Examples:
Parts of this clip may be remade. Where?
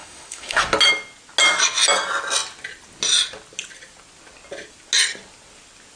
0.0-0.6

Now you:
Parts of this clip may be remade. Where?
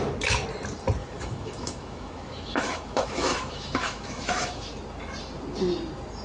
1.0-4.7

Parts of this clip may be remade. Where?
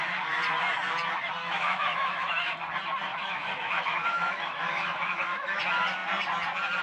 1.4-2.5; 3.1-5.6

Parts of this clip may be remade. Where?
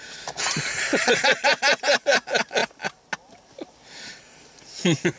none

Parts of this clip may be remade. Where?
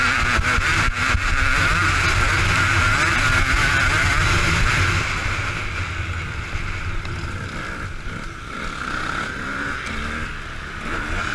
none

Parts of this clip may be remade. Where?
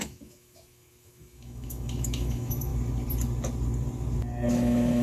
0.0-2.7; 4.5-5.0